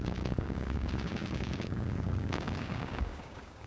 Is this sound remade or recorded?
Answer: remade